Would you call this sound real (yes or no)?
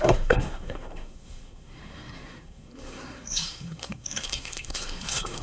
no